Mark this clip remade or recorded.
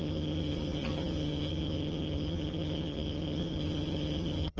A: remade